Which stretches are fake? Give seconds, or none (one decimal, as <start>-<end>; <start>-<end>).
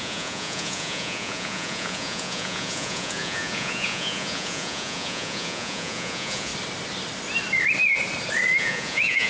0.0-6.5; 8.6-9.3